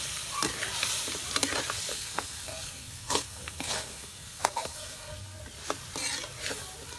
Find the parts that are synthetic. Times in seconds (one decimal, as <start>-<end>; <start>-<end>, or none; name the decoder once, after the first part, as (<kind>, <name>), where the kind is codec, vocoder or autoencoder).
1.9-5.4 (codec, SNAC)